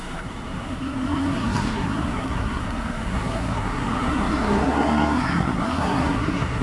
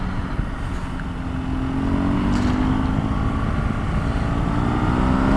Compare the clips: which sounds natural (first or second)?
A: second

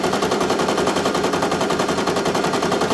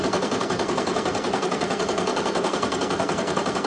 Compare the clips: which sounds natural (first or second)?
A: first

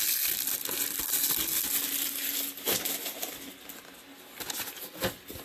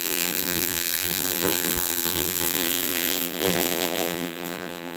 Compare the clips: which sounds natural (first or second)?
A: first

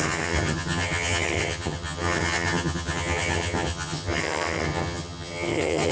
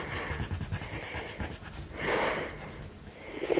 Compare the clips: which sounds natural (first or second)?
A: second